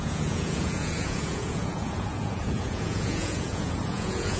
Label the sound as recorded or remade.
remade